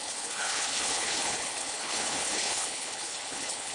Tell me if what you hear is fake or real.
fake